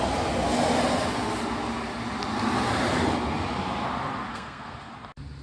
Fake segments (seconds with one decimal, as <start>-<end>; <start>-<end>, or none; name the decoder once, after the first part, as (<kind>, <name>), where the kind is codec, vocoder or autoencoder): 4.3-4.9 (codec, SNAC)